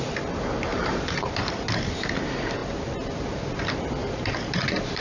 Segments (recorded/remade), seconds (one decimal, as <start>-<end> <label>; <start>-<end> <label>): 0.0-0.7 recorded; 0.7-1.7 remade; 1.7-2.6 recorded; 2.6-3.6 remade; 3.6-4.0 recorded; 4.0-5.0 remade